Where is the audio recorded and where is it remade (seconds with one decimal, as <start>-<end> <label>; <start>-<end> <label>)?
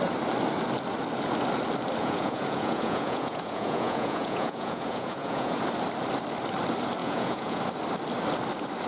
0.0-2.0 recorded; 2.0-5.6 remade; 5.6-7.0 recorded; 7.0-7.6 remade; 7.6-8.9 recorded